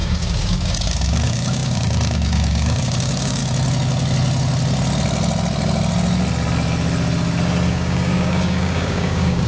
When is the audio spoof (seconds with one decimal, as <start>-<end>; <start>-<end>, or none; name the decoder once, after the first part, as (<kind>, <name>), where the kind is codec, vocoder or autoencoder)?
0.0-3.4 (codec, DAC); 7.7-9.5